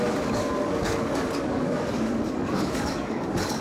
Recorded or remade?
remade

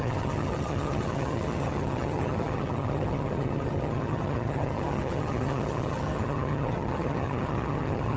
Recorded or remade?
remade